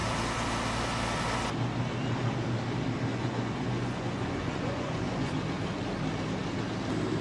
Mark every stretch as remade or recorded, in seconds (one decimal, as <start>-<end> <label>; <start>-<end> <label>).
0.0-3.1 recorded; 3.1-5.3 remade; 5.3-7.2 recorded